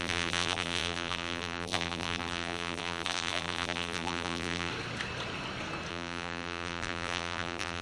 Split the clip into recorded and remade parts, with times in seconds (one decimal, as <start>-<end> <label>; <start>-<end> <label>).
0.0-4.7 remade; 4.7-5.9 recorded; 5.9-7.8 remade